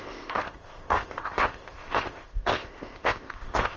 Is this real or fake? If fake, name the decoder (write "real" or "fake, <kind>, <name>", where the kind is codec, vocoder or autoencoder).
fake, codec, ZipCodec